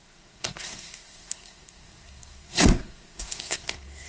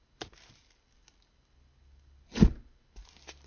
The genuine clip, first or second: second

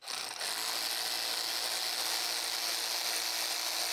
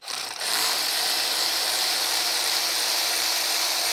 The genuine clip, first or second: first